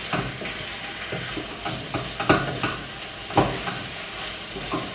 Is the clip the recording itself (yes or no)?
yes